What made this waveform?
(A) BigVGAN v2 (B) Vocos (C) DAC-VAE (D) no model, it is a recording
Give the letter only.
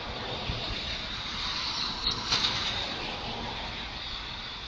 D